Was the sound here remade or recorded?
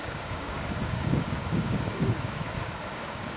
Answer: remade